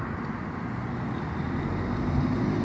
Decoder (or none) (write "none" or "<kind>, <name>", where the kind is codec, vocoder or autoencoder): none